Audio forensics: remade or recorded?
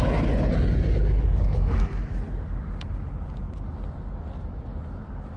recorded